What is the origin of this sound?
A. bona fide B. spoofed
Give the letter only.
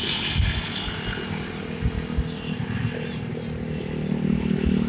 A